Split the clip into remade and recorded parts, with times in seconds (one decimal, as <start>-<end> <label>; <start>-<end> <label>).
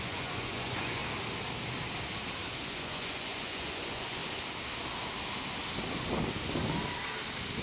0.0-1.0 remade; 1.0-2.6 recorded; 2.6-4.2 remade; 4.2-7.6 recorded